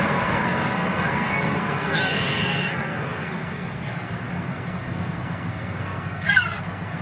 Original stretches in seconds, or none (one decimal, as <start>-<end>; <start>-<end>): none